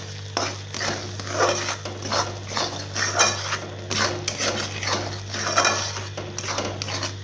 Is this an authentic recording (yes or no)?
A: yes